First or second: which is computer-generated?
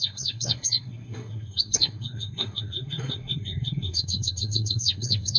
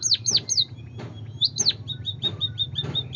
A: first